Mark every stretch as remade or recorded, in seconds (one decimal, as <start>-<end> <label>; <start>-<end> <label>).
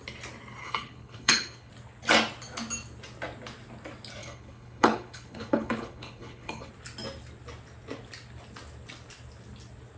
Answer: 0.0-0.6 recorded; 0.6-1.7 remade; 1.7-4.2 recorded; 4.2-6.7 remade; 6.7-10.0 recorded